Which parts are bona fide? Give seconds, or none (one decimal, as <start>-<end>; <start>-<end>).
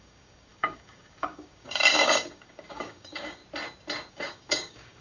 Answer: 3.4-4.1